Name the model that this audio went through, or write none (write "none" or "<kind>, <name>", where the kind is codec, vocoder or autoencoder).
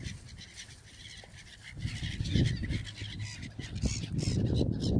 none